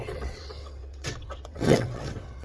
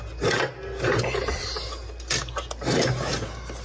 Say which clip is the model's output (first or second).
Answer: first